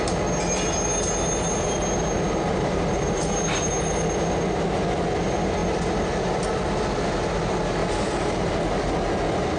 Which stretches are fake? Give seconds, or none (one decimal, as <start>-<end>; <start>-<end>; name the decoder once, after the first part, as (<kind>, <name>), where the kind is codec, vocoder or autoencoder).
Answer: 2.5-3.7 (vocoder, BigVGAN v2); 7.8-8.5